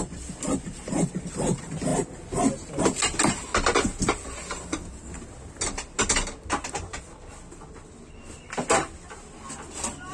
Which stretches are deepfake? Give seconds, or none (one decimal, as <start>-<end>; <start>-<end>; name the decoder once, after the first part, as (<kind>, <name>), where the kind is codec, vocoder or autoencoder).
none